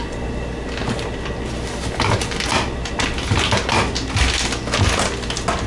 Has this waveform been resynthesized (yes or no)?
no